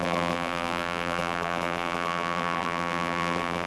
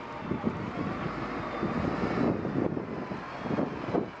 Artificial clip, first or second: first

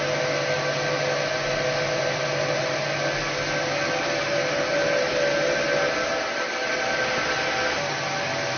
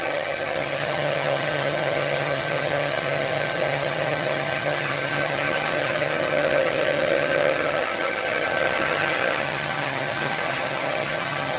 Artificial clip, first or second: second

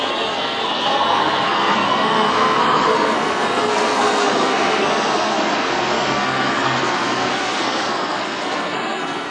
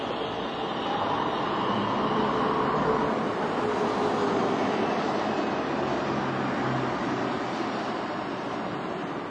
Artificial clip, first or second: first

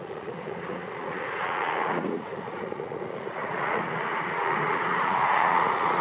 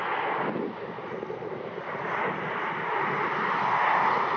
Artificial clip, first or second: first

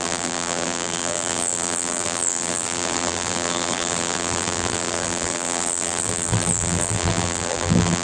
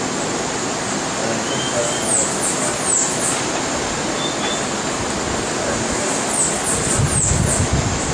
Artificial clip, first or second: first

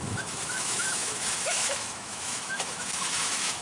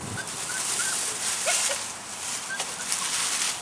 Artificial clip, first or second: first